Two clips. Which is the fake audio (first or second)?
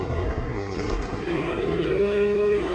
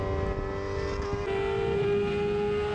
first